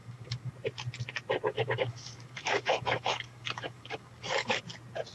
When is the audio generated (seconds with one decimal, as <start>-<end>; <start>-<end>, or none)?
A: 0.0-0.5; 1.5-4.6